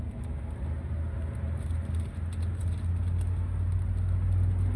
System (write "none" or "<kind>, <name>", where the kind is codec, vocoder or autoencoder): none